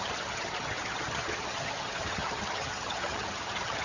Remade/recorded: remade